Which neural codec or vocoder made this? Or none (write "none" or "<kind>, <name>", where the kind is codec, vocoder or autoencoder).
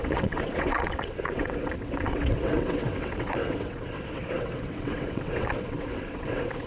vocoder, WaveNeXt